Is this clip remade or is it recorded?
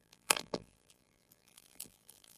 remade